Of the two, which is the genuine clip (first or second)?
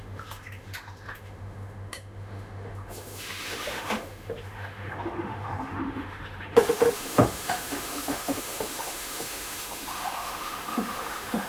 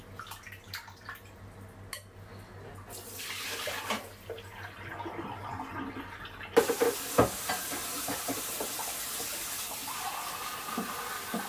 second